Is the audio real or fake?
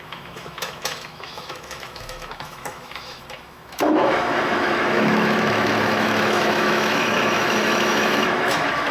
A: fake